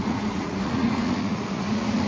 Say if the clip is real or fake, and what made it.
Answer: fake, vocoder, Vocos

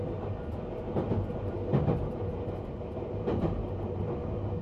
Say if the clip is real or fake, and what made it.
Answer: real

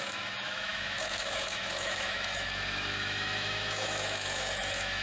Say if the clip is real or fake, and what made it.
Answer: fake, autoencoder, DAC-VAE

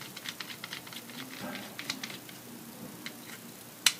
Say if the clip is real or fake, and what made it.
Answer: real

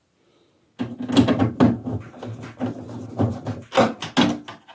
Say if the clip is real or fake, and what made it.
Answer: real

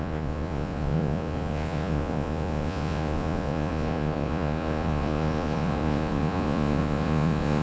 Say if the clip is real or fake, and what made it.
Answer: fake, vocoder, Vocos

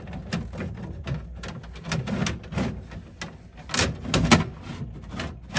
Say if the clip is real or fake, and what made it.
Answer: real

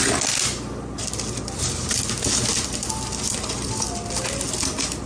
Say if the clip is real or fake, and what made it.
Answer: real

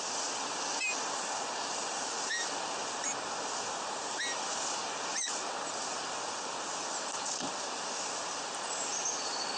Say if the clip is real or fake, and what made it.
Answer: real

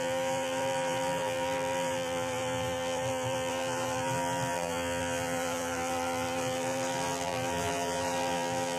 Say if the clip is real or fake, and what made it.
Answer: fake, vocoder, BigVGAN v2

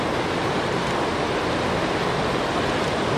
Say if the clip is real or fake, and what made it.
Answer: real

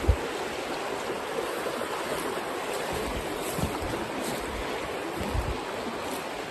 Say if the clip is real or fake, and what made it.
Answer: real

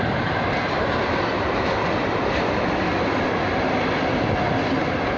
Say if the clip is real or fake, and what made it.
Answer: real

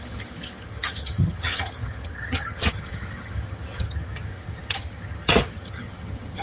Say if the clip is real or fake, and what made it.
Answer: fake, vocoder, HiFi-GAN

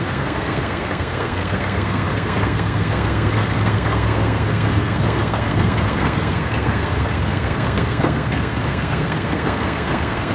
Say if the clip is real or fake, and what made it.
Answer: fake, codec, SNAC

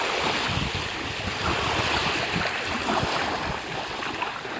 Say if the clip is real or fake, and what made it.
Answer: real